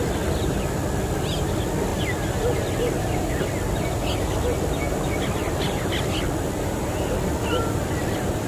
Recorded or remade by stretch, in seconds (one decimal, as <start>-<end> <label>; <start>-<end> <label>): 0.0-8.5 recorded